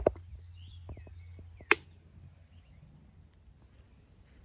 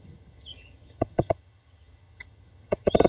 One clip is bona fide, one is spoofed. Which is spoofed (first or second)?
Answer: second